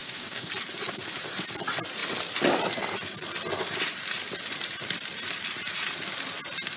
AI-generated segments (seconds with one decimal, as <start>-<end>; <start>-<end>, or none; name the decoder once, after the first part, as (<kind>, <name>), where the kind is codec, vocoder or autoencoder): 0.0-0.5 (codec, DAC)